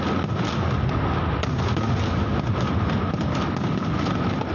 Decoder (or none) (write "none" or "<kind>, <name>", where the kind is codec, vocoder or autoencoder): none